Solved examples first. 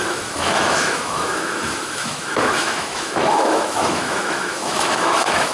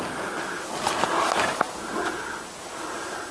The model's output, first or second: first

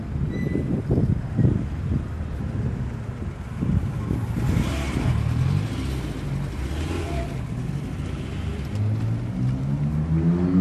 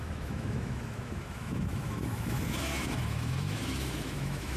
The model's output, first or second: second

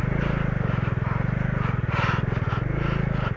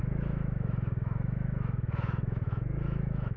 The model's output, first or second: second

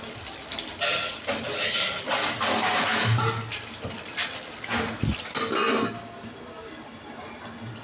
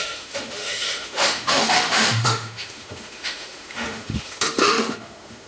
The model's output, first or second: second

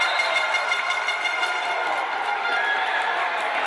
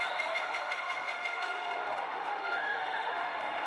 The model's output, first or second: second